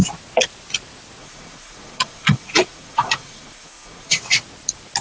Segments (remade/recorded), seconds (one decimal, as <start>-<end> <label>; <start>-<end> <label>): 0.0-1.2 recorded; 1.2-4.2 remade; 4.2-5.0 recorded